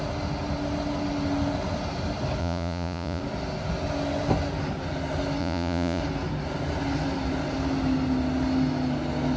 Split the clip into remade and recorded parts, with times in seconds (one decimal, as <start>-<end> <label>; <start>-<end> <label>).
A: 0.0-2.4 recorded; 2.4-3.2 remade; 3.2-5.4 recorded; 5.4-6.0 remade; 6.0-9.4 recorded

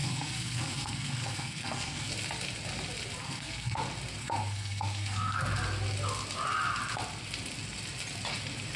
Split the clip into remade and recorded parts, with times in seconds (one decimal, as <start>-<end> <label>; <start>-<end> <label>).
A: 0.0-2.1 remade; 2.1-3.2 recorded; 3.2-3.8 remade; 3.8-4.2 recorded; 4.2-5.4 remade; 5.4-8.8 recorded

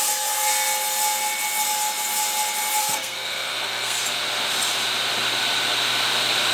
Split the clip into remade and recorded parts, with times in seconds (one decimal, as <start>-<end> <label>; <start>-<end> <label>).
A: 0.0-0.5 remade; 0.5-2.8 recorded; 2.8-4.0 remade; 4.0-6.5 recorded

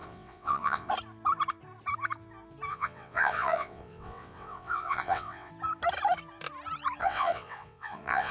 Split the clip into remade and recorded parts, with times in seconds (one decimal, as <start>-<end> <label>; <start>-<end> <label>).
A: 0.0-0.9 remade; 0.9-2.7 recorded; 2.7-5.5 remade; 5.5-7.0 recorded; 7.0-8.3 remade

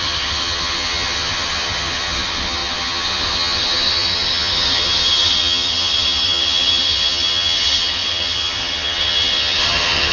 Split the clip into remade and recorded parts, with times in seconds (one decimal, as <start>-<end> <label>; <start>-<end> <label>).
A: 0.0-10.1 remade

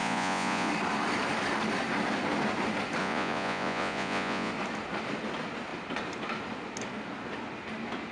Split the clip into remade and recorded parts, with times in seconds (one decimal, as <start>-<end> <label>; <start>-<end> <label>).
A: 0.0-0.7 remade; 0.7-3.0 recorded; 3.0-4.5 remade; 4.5-8.1 recorded

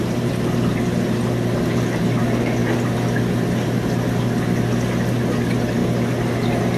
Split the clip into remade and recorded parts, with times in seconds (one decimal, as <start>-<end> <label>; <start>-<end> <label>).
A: 0.0-6.8 recorded

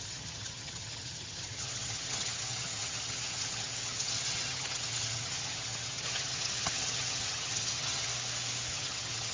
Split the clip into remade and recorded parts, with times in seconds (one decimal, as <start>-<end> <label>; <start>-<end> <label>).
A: 0.0-8.1 remade; 8.1-8.7 recorded; 8.7-9.3 remade